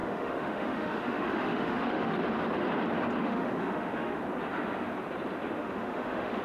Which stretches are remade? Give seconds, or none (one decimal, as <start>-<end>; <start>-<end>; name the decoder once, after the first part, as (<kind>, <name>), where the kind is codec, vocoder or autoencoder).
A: 0.0-2.2 (autoencoder, DAC-VAE); 3.2-4.2; 5.6-6.4